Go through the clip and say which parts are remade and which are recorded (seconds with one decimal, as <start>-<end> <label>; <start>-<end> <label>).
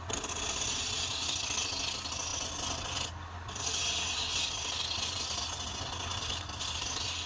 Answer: 0.0-7.3 recorded